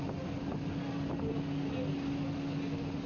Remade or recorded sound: recorded